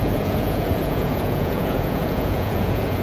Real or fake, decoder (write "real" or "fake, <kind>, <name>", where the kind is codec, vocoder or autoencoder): fake, vocoder, Vocos